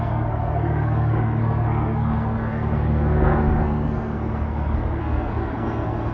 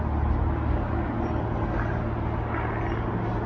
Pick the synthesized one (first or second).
first